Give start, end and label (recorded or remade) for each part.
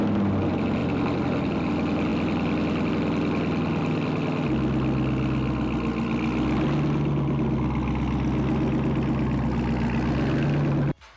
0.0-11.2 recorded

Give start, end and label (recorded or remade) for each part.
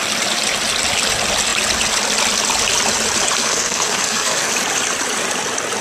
0.0-3.4 recorded; 3.4-4.5 remade; 4.5-5.8 recorded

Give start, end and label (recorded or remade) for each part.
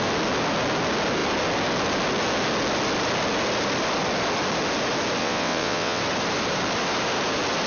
0.0-5.2 recorded; 5.2-6.0 remade; 6.0-7.7 recorded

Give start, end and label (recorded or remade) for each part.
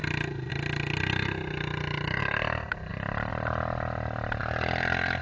0.0-5.2 recorded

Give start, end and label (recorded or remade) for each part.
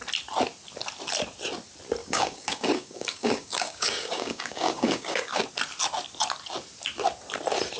0.0-2.0 recorded; 2.0-5.4 remade; 5.4-7.8 recorded